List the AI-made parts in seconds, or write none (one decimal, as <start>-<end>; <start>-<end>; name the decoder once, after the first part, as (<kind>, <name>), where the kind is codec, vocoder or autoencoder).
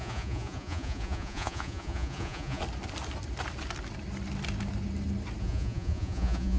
0.0-2.6 (vocoder, Vocos); 5.4-6.6